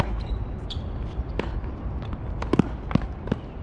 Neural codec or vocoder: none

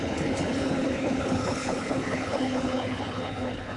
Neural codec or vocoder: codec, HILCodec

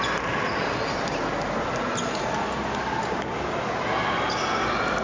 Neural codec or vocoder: none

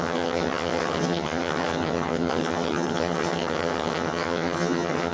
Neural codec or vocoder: vocoder, HiFi-GAN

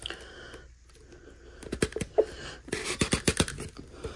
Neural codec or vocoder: none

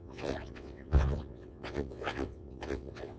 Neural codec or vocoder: vocoder, WaveNeXt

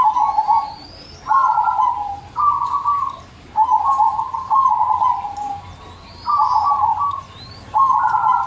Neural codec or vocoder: none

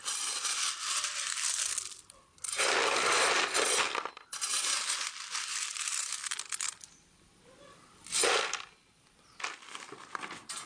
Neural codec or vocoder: none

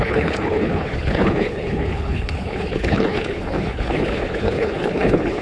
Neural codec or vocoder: codec, HILCodec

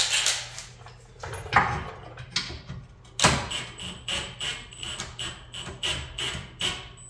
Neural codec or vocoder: none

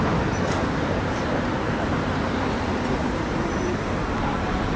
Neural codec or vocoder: vocoder, BigVGAN v2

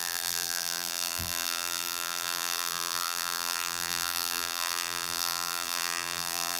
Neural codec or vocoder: vocoder, BigVGAN v2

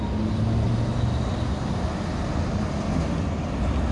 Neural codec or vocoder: none